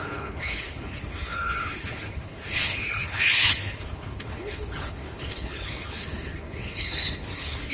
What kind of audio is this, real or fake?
fake